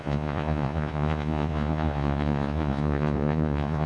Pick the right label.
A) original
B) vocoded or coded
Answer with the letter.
B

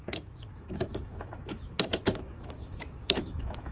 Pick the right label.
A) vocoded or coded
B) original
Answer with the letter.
A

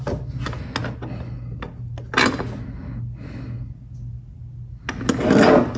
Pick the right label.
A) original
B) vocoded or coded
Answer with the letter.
A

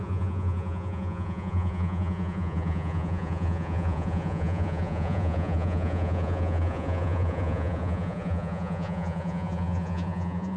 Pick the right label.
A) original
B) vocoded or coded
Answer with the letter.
B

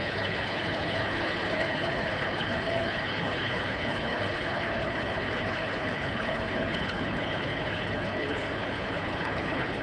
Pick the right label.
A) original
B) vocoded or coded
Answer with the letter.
B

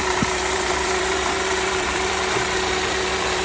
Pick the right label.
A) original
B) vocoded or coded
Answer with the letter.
B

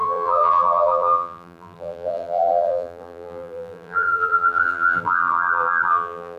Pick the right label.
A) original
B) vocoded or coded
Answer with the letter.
B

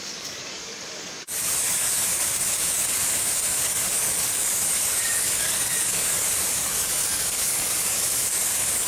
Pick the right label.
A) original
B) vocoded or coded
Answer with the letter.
B